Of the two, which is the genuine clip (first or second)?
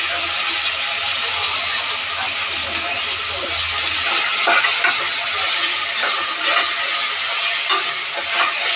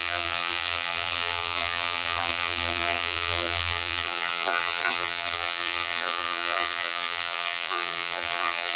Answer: first